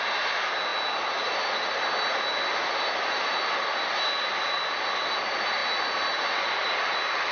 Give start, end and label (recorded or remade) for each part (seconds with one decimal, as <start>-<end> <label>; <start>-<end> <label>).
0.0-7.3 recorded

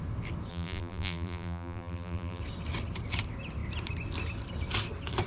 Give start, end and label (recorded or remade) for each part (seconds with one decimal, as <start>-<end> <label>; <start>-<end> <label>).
0.0-0.5 recorded; 0.5-2.4 remade; 2.4-5.3 recorded

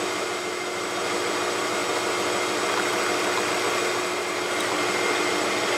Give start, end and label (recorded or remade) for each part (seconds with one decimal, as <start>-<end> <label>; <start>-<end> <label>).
0.0-5.8 recorded

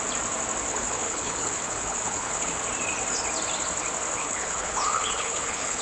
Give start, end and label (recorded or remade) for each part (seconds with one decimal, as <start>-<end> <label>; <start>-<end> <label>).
0.0-0.7 recorded; 0.7-2.6 remade; 2.6-4.2 recorded; 4.2-5.8 remade

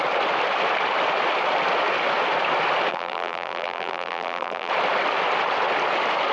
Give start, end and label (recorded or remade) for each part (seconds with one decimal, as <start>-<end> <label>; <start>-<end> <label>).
0.0-2.9 recorded; 2.9-4.7 remade; 4.7-6.3 recorded

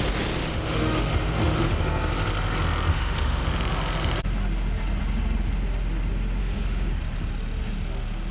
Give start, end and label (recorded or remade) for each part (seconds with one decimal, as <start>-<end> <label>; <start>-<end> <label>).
0.0-0.5 recorded; 0.5-1.8 remade; 1.8-2.9 recorded; 2.9-3.4 remade; 3.4-6.4 recorded; 6.4-6.9 remade; 6.9-8.3 recorded